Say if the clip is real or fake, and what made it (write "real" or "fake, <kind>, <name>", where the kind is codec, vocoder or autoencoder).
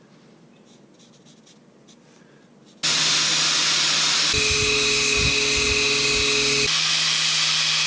real